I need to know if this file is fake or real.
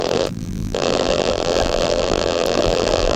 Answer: fake